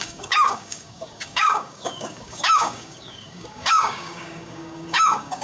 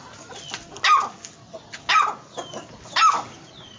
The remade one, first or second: first